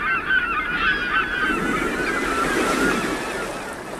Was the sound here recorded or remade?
recorded